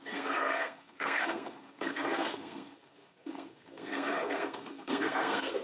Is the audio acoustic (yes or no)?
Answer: no